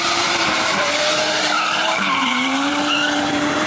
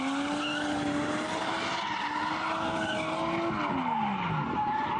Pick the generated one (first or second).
first